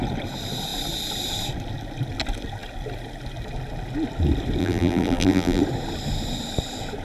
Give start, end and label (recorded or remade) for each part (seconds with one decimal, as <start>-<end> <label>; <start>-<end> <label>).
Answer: 0.0-4.6 recorded; 4.6-5.6 remade; 5.6-7.0 recorded